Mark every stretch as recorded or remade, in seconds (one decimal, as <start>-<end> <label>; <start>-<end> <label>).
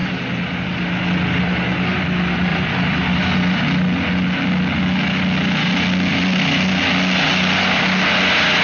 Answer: 0.0-2.5 recorded; 2.5-3.2 remade; 3.2-6.1 recorded; 6.1-6.8 remade; 6.8-8.6 recorded